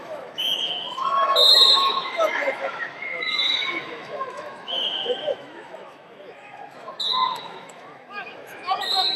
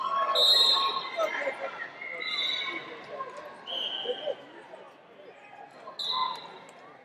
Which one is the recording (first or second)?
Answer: second